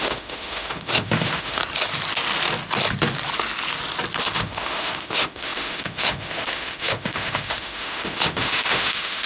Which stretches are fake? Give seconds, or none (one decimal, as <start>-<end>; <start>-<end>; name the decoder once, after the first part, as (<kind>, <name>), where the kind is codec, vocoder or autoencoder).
0.0-1.6 (autoencoder, DAC-VAE); 4.2-9.3